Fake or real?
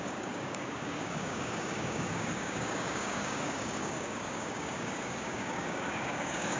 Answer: fake